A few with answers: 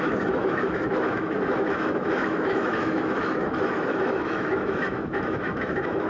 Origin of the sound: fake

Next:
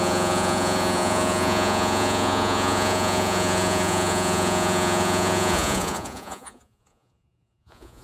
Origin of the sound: fake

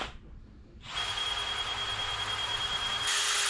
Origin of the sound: fake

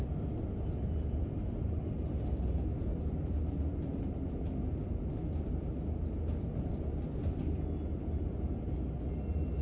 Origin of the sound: real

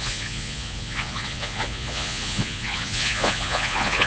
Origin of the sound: fake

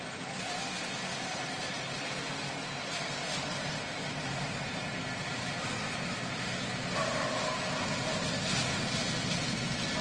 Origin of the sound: real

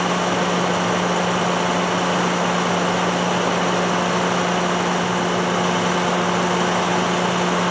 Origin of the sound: real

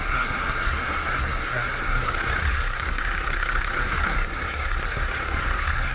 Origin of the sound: fake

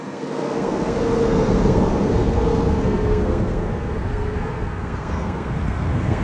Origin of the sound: fake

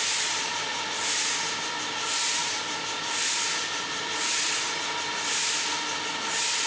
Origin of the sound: real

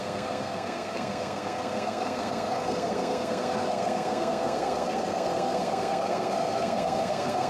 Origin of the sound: fake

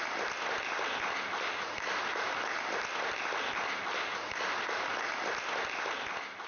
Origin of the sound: real